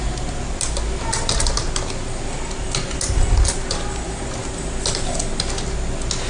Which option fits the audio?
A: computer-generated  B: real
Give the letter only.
B